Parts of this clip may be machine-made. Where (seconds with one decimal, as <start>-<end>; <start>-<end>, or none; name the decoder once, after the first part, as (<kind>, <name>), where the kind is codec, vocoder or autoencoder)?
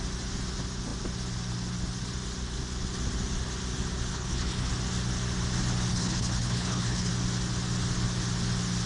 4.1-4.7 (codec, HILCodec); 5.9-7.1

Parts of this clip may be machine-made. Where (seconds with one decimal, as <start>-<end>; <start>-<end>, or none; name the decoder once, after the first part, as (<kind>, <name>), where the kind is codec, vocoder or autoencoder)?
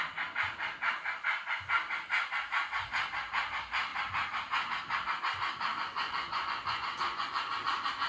5.7-7.4 (vocoder, Vocos)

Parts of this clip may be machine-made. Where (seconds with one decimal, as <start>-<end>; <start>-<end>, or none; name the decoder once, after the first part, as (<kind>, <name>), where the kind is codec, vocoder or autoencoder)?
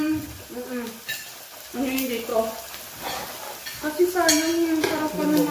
2.3-3.0 (vocoder, BigVGAN v2)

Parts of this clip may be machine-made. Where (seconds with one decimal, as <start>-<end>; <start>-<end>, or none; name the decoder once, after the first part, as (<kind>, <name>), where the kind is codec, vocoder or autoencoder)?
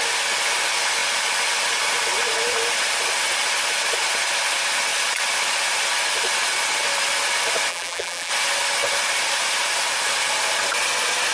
7.7-8.3 (vocoder, BigVGAN v2)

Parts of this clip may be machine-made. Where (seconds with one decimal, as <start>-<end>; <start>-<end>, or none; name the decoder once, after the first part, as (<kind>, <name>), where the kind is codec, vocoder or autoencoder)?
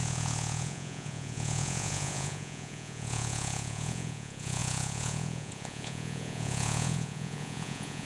0.0-8.1 (vocoder, Vocos)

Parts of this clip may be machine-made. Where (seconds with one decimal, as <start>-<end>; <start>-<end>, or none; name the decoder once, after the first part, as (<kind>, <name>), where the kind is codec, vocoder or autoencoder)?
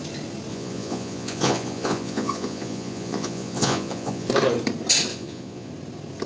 0.5-4.3 (vocoder, Vocos); 5.1-5.7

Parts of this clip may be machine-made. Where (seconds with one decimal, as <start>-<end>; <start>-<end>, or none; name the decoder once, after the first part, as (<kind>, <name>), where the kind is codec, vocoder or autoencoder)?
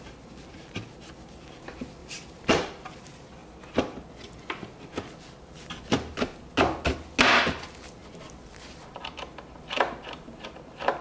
2.0-3.0 (vocoder, BigVGAN v2)